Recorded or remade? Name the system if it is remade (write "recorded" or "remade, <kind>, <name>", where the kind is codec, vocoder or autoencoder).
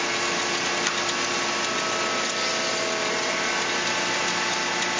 recorded